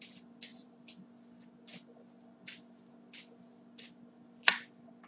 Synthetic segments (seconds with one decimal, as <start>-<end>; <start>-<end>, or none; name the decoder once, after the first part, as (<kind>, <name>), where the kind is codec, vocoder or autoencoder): 0.5-1.0 (vocoder, BigVGAN v2)

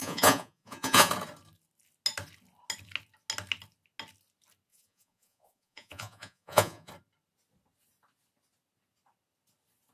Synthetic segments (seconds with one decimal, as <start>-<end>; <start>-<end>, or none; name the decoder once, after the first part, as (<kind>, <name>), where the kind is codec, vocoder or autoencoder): 0.0-1.1 (vocoder, Vocos); 4.7-6.9

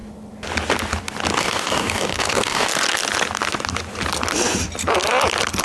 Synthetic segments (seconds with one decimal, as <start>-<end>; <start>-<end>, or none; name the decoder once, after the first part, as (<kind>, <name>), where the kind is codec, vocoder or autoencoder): 1.4-2.7 (codec, DAC)

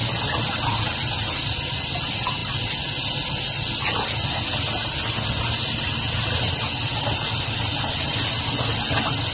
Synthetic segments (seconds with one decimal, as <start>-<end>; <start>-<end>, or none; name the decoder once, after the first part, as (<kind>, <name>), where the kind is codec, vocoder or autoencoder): none

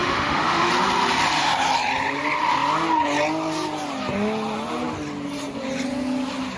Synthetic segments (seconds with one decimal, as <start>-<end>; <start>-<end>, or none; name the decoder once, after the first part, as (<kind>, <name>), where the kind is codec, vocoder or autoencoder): 0.0-0.7 (autoencoder, DAC-VAE)

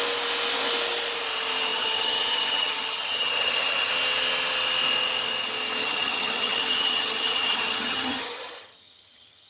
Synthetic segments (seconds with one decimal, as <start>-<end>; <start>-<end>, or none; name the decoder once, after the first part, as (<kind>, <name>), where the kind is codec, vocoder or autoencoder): 1.7-3.9 (vocoder, HiFi-GAN); 5.8-9.5

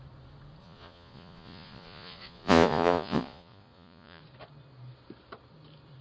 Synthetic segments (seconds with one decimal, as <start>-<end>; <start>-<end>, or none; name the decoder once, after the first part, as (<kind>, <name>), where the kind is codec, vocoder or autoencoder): 0.6-4.2 (vocoder, Vocos)